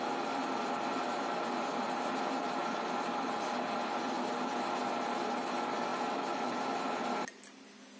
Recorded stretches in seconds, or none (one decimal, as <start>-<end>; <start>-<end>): 0.0-2.6; 4.0-5.9; 7.0-8.0